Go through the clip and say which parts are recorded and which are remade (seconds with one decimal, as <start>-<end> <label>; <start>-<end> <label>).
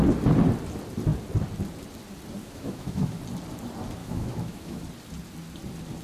0.0-2.4 recorded; 2.4-3.2 remade; 3.2-4.0 recorded; 4.0-4.8 remade; 4.8-6.0 recorded